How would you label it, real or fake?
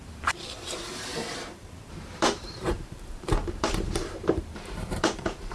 fake